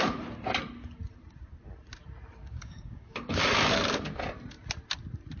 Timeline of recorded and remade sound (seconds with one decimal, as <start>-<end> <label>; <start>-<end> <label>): 0.0-2.4 recorded; 2.4-3.1 remade; 3.1-5.4 recorded